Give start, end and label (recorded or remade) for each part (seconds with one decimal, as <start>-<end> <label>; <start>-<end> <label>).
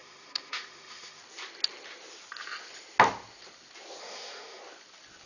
0.0-1.2 remade; 1.2-4.0 recorded; 4.0-4.6 remade; 4.6-5.3 recorded